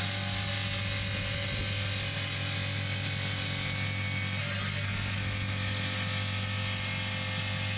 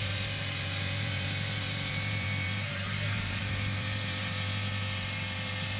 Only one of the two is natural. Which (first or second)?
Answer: first